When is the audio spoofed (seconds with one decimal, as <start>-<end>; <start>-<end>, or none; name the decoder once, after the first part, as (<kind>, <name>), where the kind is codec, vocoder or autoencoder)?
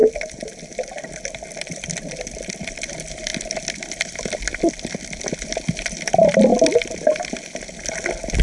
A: 1.7-6.5 (vocoder, BigVGAN v2)